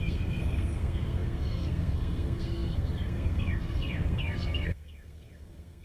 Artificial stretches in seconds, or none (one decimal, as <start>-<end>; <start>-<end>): 0.0-5.8